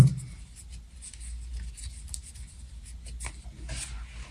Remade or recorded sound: recorded